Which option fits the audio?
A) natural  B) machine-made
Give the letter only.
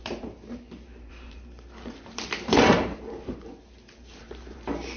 B